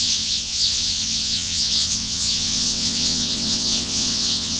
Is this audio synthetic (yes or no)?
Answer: yes